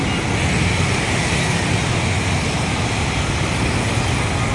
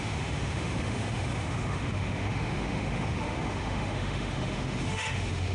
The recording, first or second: first